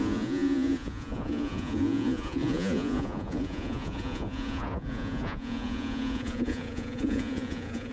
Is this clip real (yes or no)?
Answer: no